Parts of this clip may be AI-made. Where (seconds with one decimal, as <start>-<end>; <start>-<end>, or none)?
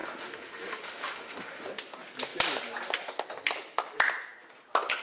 0.0-1.7